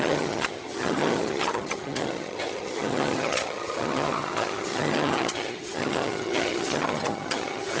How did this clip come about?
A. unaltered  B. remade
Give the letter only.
B